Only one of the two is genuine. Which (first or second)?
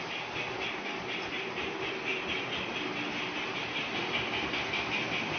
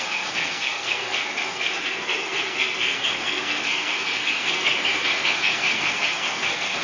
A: first